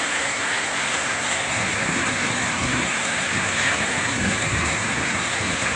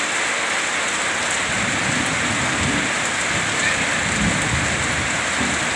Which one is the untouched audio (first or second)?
second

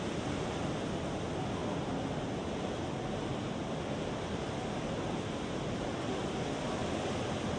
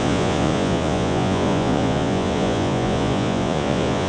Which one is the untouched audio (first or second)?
first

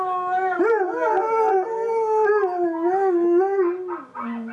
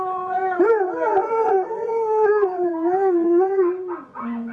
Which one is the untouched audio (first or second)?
first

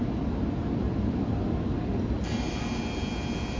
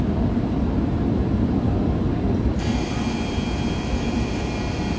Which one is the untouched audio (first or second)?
first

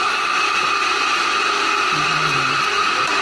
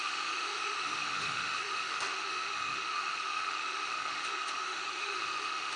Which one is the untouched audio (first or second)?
first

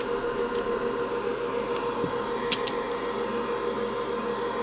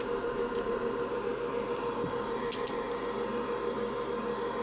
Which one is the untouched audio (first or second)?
first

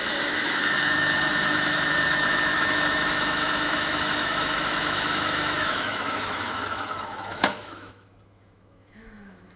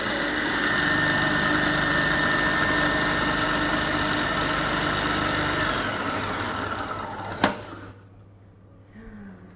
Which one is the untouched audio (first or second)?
second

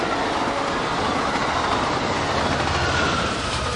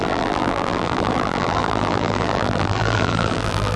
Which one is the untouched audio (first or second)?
first